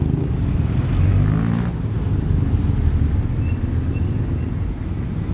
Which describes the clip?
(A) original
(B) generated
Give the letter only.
A